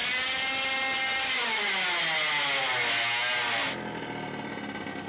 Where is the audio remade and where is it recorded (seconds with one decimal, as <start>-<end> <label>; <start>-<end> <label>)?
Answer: 0.0-5.1 recorded